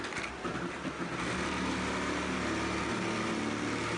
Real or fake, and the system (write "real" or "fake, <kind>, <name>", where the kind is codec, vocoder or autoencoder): real